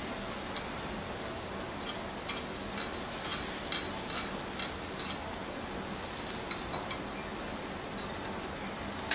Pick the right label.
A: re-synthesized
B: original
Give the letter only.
B